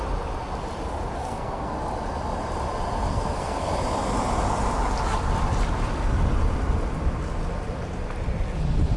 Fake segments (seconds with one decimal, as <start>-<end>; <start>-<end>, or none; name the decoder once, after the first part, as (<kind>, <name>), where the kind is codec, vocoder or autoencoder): 1.2-1.7 (codec, SNAC); 3.1-3.7